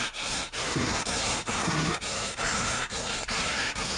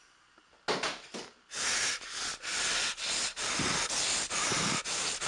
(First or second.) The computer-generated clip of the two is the first